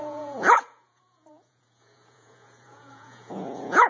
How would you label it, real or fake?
fake